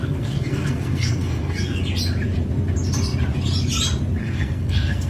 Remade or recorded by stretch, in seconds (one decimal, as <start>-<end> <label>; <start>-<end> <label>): 0.0-1.8 remade; 1.8-4.2 recorded; 4.2-5.1 remade